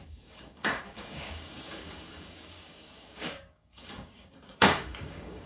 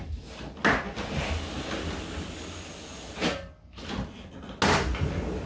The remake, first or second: first